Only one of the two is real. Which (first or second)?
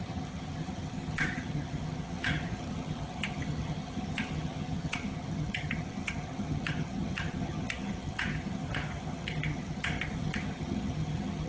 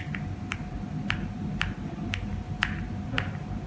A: second